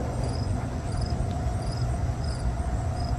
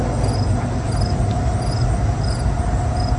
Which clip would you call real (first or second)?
second